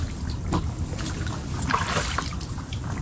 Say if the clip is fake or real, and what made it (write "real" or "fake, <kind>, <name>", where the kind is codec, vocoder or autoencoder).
real